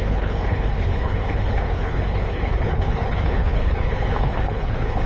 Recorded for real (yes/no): no